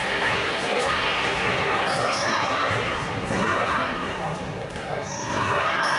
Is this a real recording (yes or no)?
no